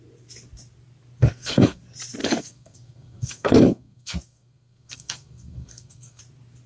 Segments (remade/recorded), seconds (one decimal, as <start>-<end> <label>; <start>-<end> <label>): 0.0-1.2 recorded; 1.2-1.8 remade; 1.8-2.2 recorded; 2.2-6.2 remade; 6.2-6.7 recorded